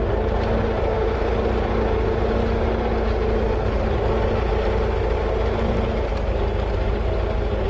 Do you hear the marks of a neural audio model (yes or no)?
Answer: no